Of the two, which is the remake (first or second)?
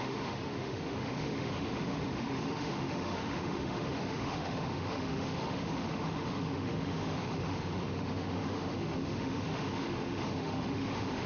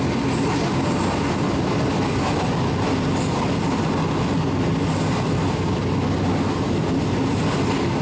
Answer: first